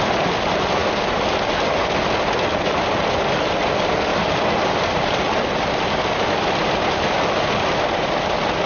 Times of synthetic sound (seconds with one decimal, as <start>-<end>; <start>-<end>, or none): none

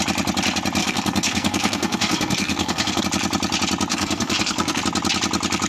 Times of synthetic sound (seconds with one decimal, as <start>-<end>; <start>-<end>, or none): 0.8-3.0; 3.9-4.8

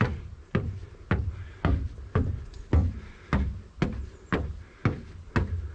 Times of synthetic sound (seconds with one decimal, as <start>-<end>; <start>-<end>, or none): none

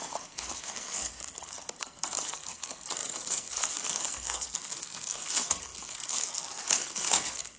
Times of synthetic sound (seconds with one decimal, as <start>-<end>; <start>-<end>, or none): 0.0-7.6